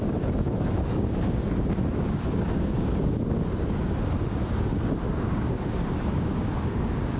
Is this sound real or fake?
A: fake